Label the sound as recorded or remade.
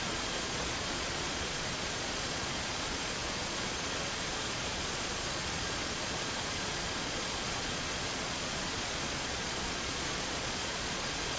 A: remade